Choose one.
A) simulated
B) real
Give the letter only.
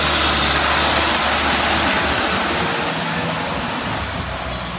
B